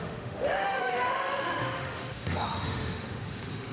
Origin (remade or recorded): remade